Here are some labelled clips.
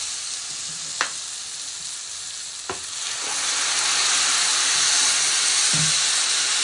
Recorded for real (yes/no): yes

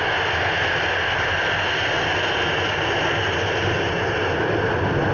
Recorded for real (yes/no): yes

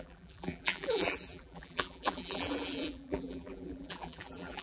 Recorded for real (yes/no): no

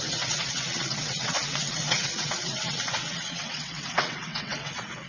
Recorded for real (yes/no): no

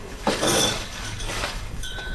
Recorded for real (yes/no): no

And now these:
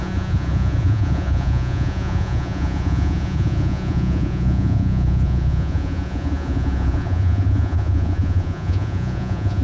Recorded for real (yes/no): no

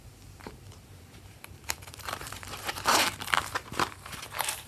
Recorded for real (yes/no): no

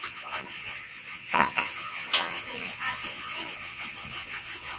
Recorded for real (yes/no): no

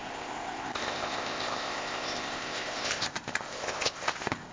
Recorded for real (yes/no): no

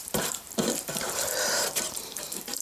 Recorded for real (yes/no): no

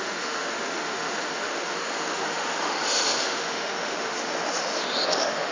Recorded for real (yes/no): no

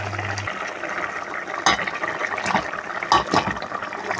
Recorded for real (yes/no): yes